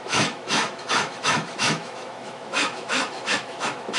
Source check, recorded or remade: remade